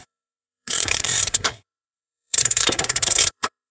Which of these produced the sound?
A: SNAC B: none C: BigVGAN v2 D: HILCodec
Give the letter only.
A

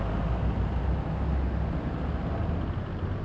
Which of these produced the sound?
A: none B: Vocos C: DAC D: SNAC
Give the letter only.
A